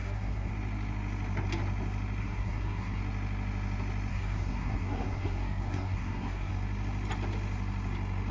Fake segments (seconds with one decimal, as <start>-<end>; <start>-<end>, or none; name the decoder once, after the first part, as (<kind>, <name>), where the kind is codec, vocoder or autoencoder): 0.0-0.5 (codec, SNAC); 2.2-3.0; 4.1-6.5